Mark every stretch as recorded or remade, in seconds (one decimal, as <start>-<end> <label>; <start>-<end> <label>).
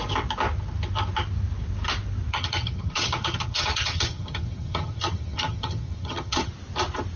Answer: 0.0-2.3 recorded; 2.3-6.5 remade; 6.5-7.2 recorded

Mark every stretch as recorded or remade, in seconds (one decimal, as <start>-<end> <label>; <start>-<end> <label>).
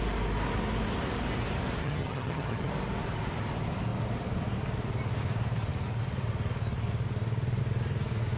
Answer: 0.0-1.8 recorded; 1.8-2.7 remade; 2.7-8.4 recorded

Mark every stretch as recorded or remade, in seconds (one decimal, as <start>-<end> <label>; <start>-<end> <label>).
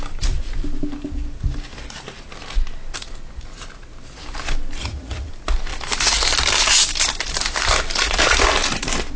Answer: 0.0-4.8 recorded; 4.8-5.3 remade; 5.3-9.2 recorded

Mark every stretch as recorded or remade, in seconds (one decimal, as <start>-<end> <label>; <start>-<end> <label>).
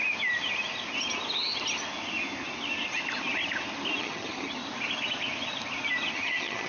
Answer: 0.0-4.0 recorded; 4.0-4.6 remade; 4.6-6.1 recorded; 6.1-6.7 remade